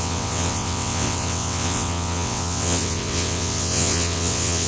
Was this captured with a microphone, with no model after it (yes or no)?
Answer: no